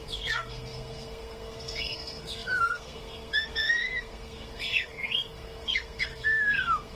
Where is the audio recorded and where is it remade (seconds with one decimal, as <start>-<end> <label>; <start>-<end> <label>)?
0.0-7.0 remade